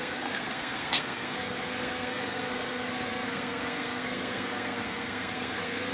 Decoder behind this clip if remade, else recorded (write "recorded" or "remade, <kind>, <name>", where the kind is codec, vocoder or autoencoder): remade, codec, SNAC